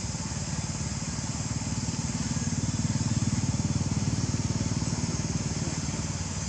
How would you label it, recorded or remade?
recorded